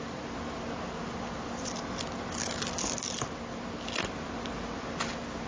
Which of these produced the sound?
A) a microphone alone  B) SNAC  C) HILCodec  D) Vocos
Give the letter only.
A